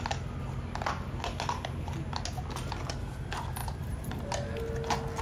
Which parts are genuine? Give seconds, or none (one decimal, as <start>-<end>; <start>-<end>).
0.0-3.6; 4.2-5.2

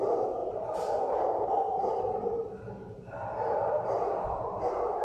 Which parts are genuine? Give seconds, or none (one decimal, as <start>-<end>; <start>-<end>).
0.0-0.4; 1.2-1.7; 2.4-3.2; 4.3-5.0

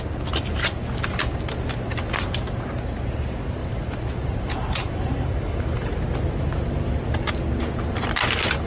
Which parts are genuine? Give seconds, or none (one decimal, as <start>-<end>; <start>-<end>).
0.0-3.6; 5.9-8.7

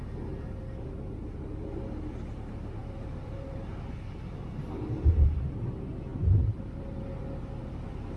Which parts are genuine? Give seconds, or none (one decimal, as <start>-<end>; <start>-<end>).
0.0-2.8; 3.9-6.1; 7.0-8.2

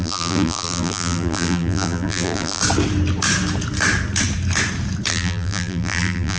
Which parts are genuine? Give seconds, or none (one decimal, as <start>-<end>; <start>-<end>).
2.6-5.1

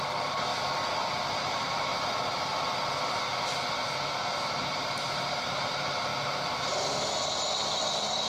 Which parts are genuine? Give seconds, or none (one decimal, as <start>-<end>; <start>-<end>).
0.5-1.3; 1.9-4.2; 6.1-7.8

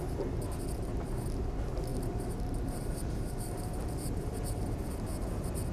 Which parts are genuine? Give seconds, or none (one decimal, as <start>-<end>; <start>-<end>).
0.0-1.9; 3.8-5.7